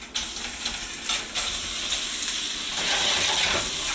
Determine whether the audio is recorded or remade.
recorded